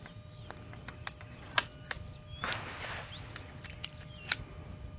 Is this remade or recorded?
recorded